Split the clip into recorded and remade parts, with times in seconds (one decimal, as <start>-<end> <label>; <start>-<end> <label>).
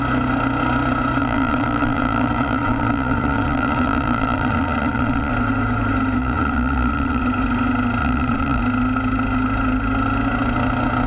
0.0-1.2 recorded; 1.2-5.3 remade; 5.3-6.2 recorded; 6.2-7.2 remade; 7.2-8.0 recorded; 8.0-8.6 remade; 8.6-11.1 recorded